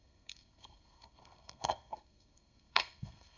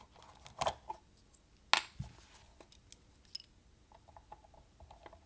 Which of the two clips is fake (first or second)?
first